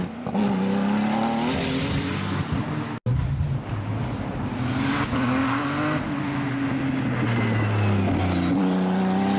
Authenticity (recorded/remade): recorded